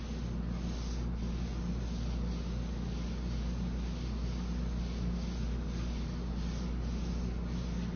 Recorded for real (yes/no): yes